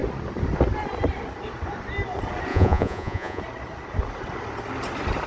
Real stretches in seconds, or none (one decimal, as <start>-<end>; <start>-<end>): 0.0-2.5; 3.4-5.3